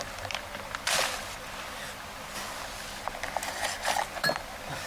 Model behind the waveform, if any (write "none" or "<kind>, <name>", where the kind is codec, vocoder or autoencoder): none